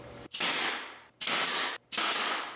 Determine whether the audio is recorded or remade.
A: recorded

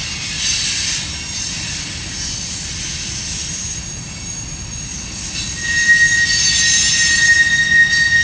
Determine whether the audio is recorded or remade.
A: recorded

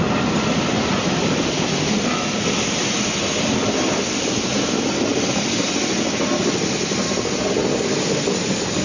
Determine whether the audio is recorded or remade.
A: recorded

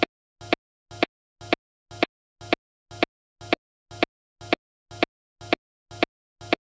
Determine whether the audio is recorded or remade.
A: recorded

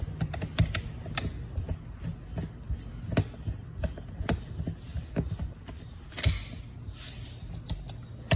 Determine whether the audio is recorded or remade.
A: recorded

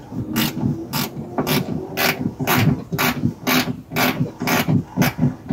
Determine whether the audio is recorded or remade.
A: recorded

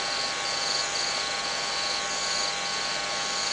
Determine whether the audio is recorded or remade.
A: recorded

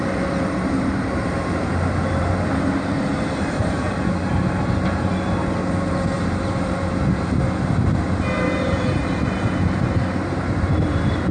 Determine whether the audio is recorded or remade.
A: remade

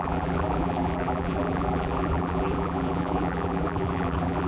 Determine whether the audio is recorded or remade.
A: remade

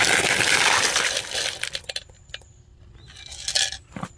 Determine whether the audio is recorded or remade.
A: recorded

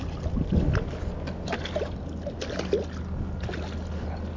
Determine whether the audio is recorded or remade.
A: recorded